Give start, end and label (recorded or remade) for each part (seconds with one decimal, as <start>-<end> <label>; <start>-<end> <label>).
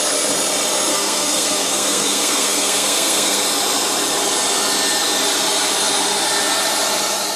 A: 0.0-0.9 recorded; 0.9-3.4 remade; 3.4-7.4 recorded